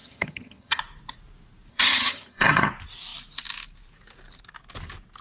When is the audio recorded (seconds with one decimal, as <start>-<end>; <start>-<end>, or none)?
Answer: 0.8-1.7; 2.7-5.2